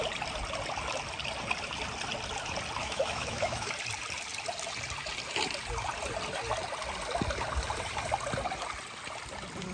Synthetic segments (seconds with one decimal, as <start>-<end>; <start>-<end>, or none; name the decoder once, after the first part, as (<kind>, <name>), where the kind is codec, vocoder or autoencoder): 2.8-3.7 (autoencoder, DAC-VAE)